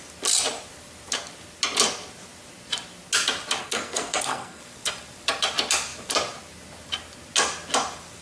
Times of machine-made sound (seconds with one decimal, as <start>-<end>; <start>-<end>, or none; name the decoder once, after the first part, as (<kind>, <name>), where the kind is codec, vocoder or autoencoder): 3.6-4.6 (codec, SNAC)